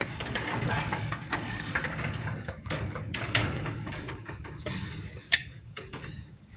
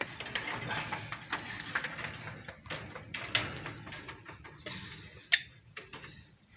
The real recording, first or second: second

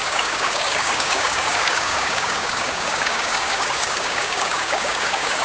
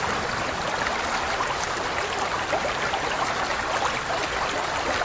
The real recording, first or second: second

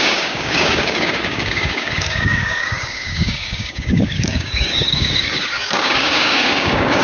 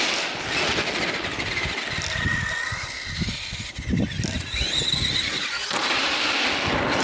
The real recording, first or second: second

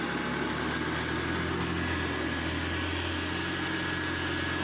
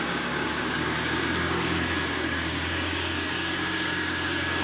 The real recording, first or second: first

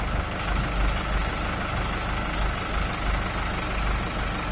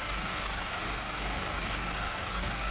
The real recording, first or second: first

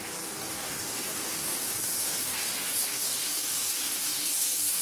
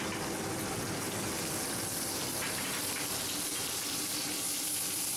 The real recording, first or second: second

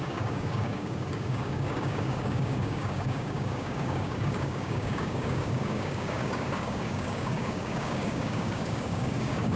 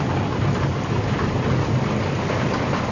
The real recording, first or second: second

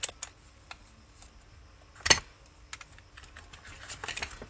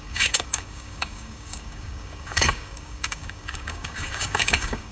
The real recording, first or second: first